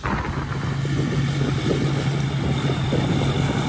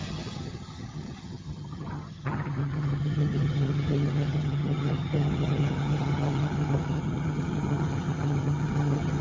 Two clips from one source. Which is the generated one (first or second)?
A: second